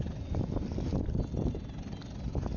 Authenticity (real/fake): real